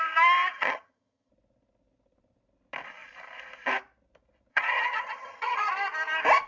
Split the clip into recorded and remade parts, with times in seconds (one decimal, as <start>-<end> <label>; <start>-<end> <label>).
0.0-0.5 recorded; 0.5-1.3 remade; 1.3-4.5 recorded; 4.5-5.7 remade; 5.7-6.5 recorded